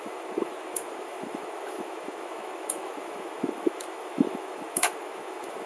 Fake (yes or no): yes